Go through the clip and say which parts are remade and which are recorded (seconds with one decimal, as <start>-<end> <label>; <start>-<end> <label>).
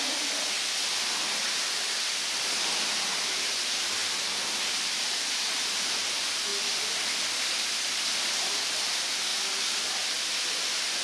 0.0-9.3 remade; 9.3-10.3 recorded; 10.3-11.0 remade